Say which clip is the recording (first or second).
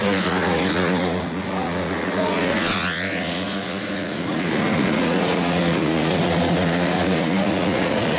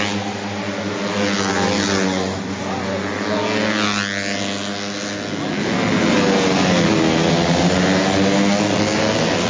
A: second